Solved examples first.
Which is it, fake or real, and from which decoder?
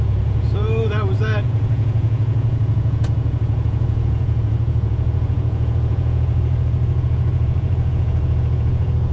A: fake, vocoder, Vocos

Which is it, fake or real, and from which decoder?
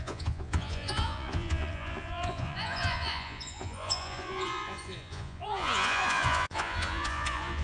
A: fake, vocoder, Vocos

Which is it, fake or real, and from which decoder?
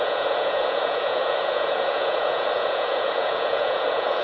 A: fake, vocoder, Vocos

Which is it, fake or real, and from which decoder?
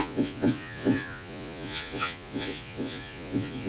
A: fake, vocoder, Vocos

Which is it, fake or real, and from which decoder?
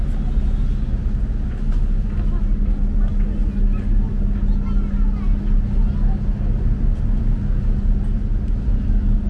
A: real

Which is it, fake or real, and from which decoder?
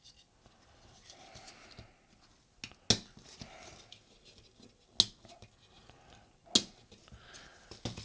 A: real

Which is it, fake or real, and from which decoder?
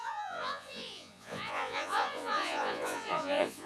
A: fake, vocoder, Vocos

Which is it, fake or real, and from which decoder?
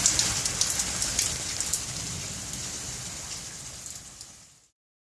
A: real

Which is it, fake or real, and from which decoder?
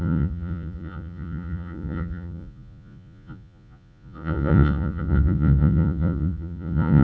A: fake, vocoder, Vocos